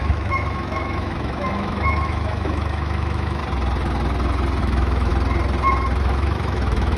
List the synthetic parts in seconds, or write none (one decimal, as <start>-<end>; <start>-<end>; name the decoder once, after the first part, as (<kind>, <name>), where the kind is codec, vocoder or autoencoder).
0.0-3.4 (autoencoder, DAC-VAE); 4.6-5.1; 6.0-7.0